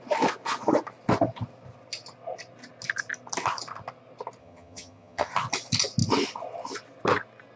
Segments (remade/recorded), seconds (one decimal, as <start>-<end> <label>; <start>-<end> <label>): 0.0-4.4 recorded; 4.4-5.3 remade; 5.3-7.6 recorded